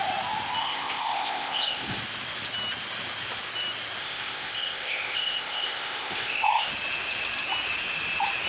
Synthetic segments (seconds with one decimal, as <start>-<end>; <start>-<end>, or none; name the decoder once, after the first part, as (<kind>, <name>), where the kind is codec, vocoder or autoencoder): 0.6-2.0 (codec, ZipCodec); 4.0-6.7